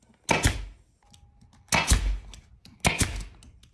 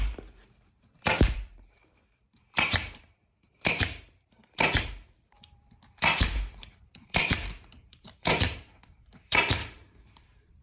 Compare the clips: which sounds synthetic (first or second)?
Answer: second